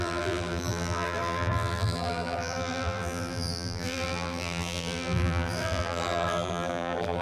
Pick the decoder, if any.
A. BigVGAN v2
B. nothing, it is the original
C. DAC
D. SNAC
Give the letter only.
A